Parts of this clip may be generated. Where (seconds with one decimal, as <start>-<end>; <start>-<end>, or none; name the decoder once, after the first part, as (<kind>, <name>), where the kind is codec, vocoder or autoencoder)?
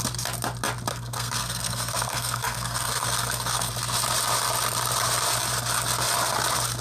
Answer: 0.9-3.7 (codec, SNAC)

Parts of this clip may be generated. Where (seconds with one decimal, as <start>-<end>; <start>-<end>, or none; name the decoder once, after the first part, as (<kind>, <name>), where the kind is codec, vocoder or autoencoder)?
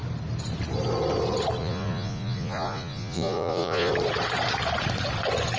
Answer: 1.6-3.9 (vocoder, Vocos)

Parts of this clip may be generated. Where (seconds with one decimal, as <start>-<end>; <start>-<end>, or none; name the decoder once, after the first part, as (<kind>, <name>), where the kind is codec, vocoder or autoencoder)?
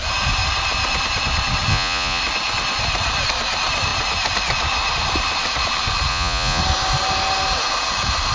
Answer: 1.7-2.2 (vocoder, Vocos); 6.1-6.6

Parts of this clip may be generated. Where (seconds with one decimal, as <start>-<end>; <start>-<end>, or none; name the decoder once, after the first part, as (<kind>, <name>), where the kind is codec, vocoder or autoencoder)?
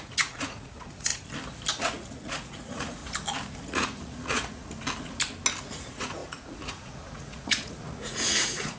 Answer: 0.0-1.1 (vocoder, Vocos); 1.8-3.0; 3.6-4.6; 5.6-8.8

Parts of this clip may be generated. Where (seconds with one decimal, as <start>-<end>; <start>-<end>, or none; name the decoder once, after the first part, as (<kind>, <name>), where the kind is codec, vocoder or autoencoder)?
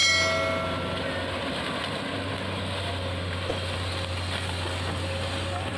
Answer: none